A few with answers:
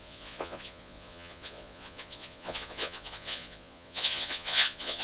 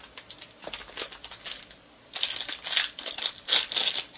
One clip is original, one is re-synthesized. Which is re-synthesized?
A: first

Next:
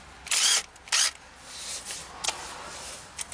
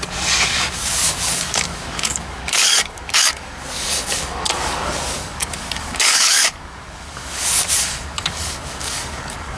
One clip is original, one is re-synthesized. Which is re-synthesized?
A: second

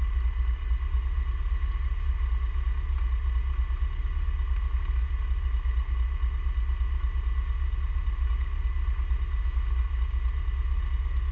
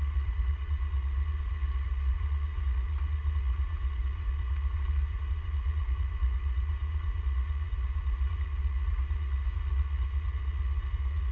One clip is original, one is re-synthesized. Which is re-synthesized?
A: second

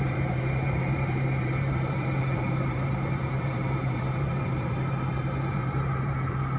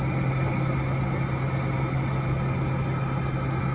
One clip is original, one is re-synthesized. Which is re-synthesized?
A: first